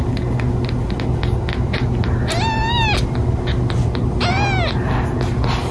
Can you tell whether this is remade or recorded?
recorded